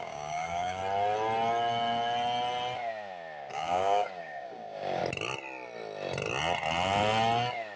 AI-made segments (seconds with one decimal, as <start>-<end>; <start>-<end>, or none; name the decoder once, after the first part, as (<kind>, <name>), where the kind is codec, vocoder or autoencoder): 0.0-0.8 (codec, DAC); 3.5-5.0